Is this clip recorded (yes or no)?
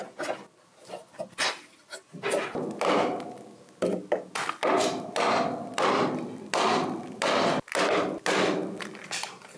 yes